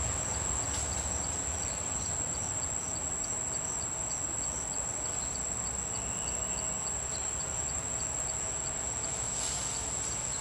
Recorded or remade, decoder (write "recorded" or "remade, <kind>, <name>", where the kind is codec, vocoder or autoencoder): recorded